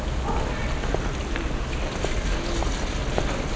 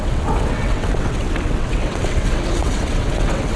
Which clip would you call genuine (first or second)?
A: first